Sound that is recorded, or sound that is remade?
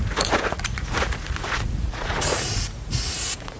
remade